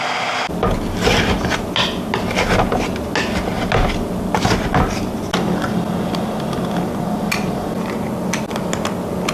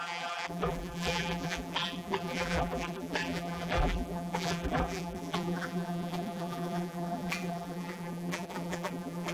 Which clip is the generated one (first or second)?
second